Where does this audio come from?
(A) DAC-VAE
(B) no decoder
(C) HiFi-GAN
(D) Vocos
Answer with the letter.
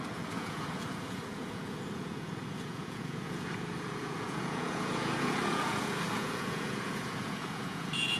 D